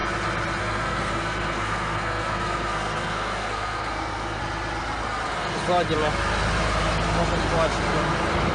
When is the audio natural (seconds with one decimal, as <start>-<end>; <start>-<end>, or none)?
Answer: 0.0-0.6; 4.4-8.5